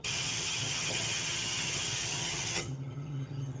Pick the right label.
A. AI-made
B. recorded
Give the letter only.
A